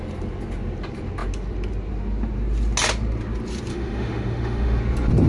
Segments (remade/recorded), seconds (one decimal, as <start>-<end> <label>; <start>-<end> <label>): 0.0-3.7 recorded; 3.7-4.8 remade; 4.8-5.3 recorded